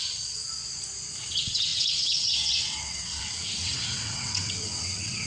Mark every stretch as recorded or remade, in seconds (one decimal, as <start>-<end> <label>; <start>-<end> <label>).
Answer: 0.0-0.4 remade; 0.4-1.1 recorded; 1.1-5.3 remade